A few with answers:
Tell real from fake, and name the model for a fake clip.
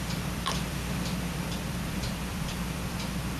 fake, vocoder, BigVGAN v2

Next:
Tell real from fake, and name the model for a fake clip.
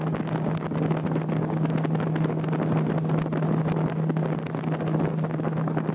real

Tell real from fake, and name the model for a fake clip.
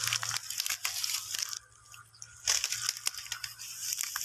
real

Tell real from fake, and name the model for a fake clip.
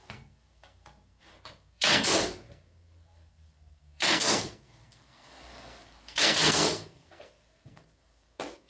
fake, codec, SNAC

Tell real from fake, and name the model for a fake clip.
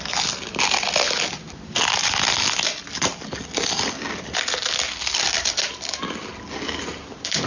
real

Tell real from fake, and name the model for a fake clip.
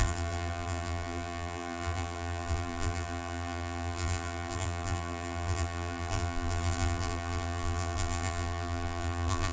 fake, vocoder, BigVGAN v2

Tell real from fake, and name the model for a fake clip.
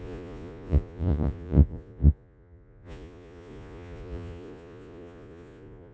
fake, vocoder, Vocos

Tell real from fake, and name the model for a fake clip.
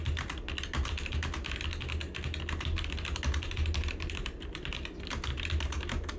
real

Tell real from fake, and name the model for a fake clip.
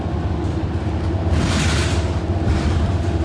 real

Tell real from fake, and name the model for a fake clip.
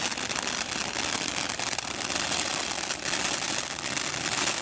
real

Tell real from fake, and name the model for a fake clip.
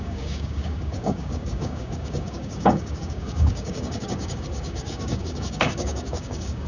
fake, codec, DAC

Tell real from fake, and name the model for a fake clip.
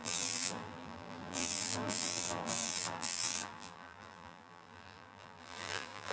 fake, vocoder, BigVGAN v2